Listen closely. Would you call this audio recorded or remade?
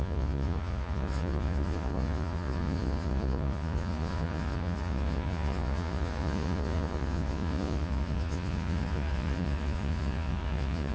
remade